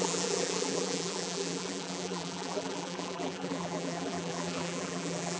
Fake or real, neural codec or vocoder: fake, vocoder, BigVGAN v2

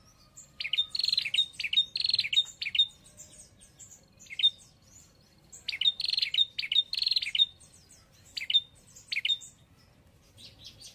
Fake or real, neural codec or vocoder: real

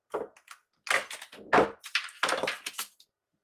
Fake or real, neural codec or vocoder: real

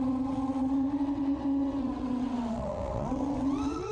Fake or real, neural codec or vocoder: fake, vocoder, WaveNeXt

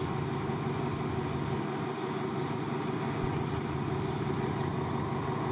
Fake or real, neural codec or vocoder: real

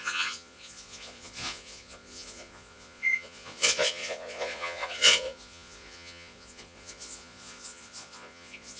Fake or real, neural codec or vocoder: fake, vocoder, Vocos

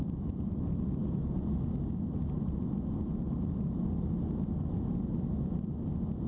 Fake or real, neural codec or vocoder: real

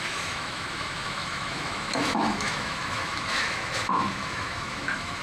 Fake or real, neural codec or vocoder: fake, autoencoder, DAC-VAE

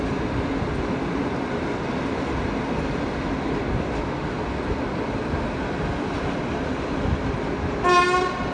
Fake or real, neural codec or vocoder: real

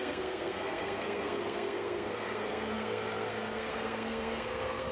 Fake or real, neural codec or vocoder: fake, codec, SNAC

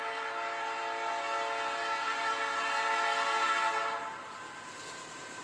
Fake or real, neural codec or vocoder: real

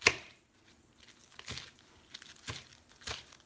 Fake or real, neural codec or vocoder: fake, vocoder, BigVGAN v2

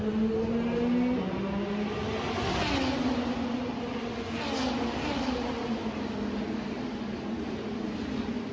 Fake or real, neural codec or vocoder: real